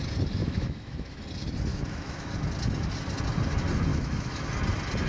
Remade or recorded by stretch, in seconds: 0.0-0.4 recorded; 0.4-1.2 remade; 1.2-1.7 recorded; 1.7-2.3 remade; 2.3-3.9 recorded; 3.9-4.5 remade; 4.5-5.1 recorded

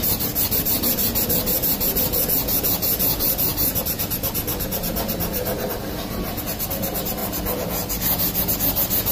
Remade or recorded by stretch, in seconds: 0.0-9.1 recorded

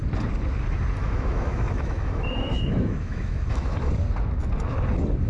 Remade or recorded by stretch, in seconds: 0.0-1.0 recorded; 1.0-3.9 remade; 3.9-5.3 recorded